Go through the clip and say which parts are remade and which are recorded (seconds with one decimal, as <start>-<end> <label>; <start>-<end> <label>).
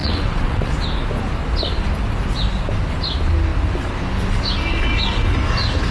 0.0-0.7 remade; 0.7-5.9 recorded